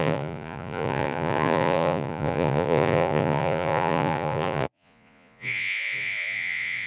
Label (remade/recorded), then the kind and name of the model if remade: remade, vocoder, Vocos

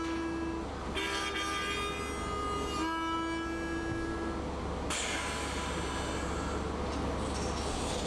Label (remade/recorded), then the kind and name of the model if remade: recorded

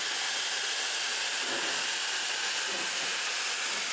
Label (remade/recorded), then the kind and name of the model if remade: recorded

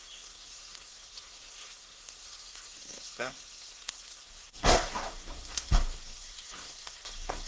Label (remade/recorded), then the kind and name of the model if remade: remade, codec, SNAC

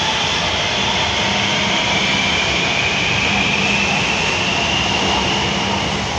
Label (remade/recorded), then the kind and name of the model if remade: recorded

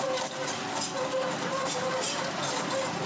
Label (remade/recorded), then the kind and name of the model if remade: recorded